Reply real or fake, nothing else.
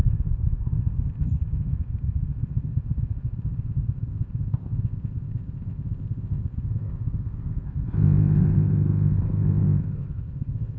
fake